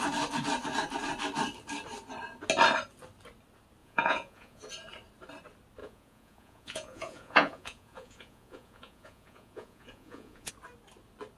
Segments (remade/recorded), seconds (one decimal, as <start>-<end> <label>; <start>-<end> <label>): 0.0-3.8 recorded; 3.8-4.6 remade; 4.6-5.8 recorded; 5.8-10.5 remade; 10.5-11.4 recorded